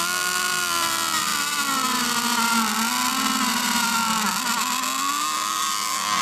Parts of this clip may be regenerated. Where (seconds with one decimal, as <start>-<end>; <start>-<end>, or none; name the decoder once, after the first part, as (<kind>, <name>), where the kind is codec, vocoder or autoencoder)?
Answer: none